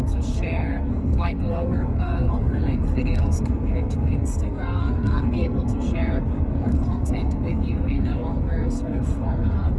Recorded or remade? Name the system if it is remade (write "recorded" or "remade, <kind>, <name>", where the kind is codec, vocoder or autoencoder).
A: remade, codec, SNAC